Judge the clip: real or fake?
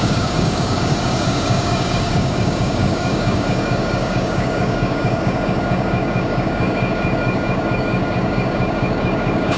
fake